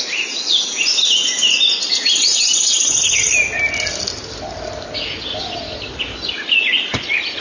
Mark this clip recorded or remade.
recorded